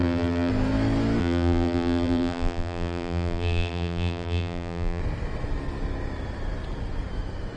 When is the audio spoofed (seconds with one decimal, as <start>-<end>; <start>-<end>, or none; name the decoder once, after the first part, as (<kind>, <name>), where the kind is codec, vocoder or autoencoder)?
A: 0.0-0.5 (vocoder, BigVGAN v2); 1.2-5.0